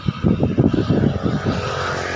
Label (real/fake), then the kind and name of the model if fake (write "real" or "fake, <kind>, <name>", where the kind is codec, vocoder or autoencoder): real